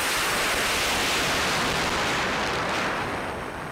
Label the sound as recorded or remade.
recorded